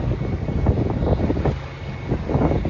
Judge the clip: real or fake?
real